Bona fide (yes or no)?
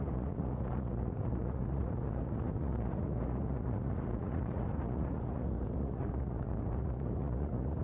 no